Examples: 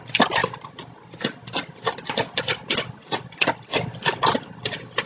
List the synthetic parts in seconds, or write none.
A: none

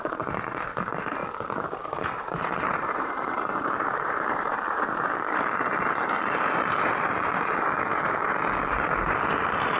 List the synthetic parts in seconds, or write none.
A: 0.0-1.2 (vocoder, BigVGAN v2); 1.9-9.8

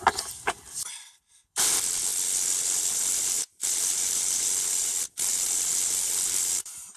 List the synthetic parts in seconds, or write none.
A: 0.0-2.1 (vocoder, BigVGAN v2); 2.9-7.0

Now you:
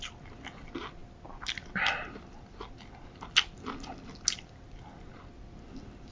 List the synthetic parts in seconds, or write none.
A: none